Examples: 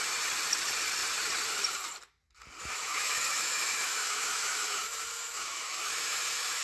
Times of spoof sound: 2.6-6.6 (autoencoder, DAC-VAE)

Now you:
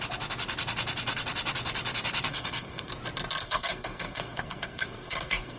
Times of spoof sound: 2.3-2.9 (codec, SNAC); 3.4-5.6

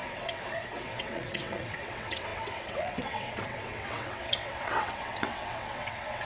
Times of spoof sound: 0.0-6.3 (vocoder, WaveNeXt)

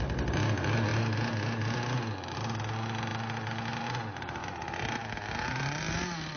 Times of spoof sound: none

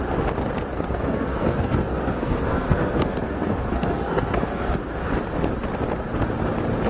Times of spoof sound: 0.7-4.8 (codec, SNAC)

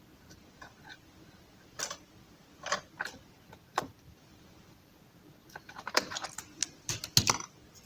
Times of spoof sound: 3.7-5.0 (vocoder, BigVGAN v2); 5.4-6.4

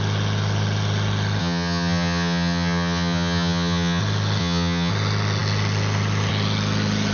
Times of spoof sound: 1.4-4.0 (vocoder, HiFi-GAN); 4.4-4.9